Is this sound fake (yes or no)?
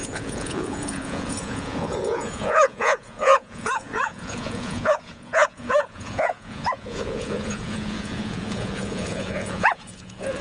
yes